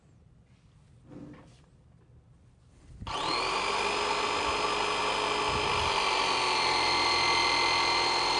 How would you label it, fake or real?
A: real